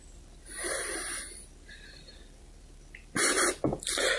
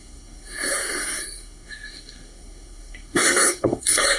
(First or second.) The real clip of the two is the first